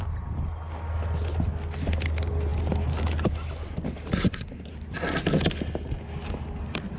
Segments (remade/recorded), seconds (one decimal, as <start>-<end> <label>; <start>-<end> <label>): 0.0-7.0 recorded